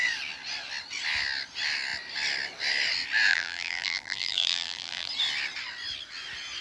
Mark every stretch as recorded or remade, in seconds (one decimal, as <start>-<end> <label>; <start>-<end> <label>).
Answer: 0.0-3.3 recorded; 3.3-5.1 remade; 5.1-6.6 recorded